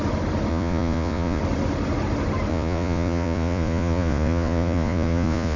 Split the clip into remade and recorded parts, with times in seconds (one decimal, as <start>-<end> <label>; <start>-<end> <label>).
0.0-0.5 recorded; 0.5-1.4 remade; 1.4-2.5 recorded; 2.5-5.6 remade